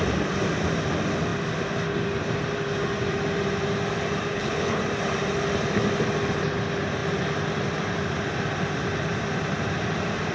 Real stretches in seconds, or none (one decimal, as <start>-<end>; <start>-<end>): 0.0-4.3; 4.8-10.3